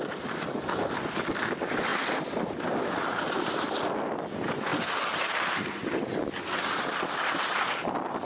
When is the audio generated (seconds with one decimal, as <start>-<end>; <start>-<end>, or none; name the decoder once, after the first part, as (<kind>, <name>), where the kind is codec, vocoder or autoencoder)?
none